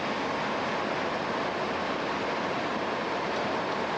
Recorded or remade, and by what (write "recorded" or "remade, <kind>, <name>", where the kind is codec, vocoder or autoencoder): recorded